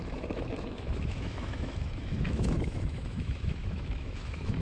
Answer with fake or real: fake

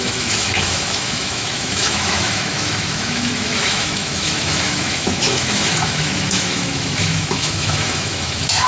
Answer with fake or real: fake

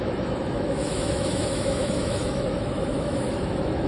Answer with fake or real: fake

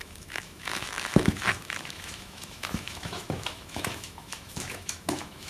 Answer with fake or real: fake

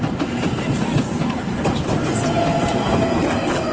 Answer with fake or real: real